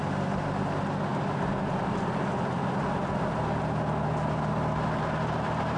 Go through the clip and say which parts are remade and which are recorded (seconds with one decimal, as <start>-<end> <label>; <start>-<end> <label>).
0.0-5.8 recorded